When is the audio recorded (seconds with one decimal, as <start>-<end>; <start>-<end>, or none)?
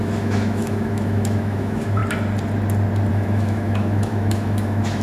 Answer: 2.0-3.1